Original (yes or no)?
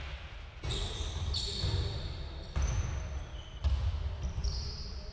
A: yes